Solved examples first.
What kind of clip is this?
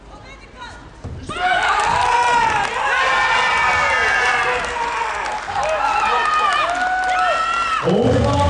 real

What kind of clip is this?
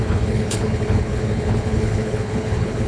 fake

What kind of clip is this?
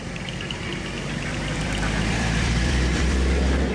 fake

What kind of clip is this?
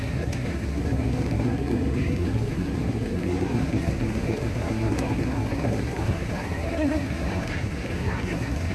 fake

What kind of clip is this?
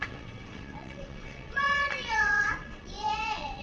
fake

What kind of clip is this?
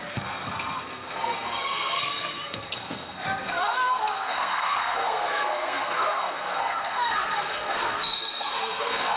fake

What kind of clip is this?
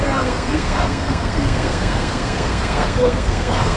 fake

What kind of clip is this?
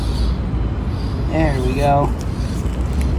real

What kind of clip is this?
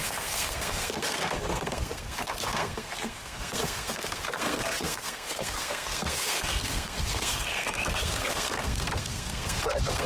fake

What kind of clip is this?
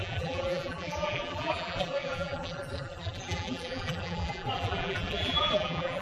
fake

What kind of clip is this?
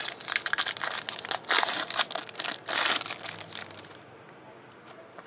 real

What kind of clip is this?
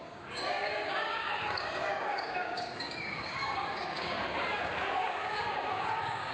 fake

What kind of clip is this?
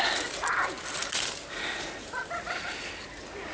real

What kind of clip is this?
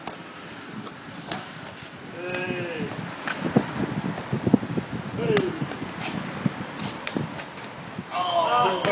real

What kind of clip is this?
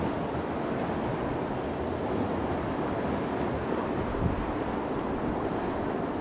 real